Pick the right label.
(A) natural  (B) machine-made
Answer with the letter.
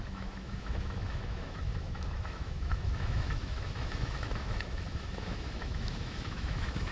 B